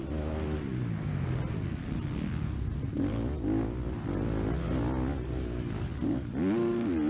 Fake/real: real